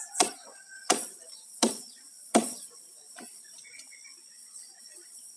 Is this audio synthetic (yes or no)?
yes